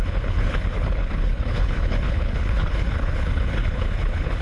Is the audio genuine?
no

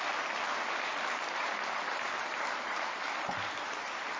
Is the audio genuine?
no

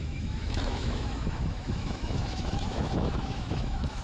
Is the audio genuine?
no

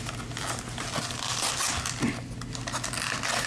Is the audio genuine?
yes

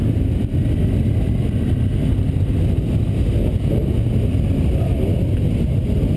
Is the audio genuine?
yes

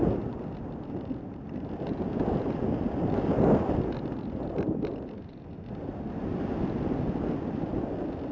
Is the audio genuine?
yes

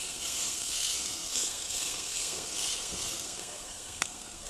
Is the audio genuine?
no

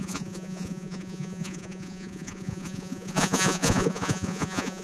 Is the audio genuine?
no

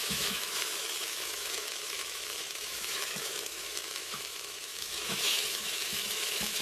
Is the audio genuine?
no